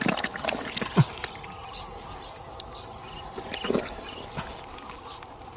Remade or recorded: recorded